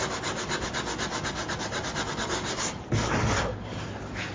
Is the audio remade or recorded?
recorded